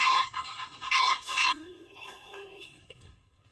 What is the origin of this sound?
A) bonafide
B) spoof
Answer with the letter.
B